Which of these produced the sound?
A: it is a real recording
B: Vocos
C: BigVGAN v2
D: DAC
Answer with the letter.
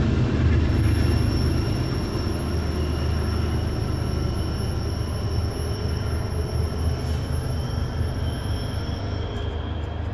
A